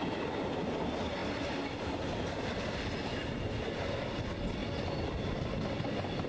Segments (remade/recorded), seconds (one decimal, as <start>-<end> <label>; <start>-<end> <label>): 0.0-6.3 recorded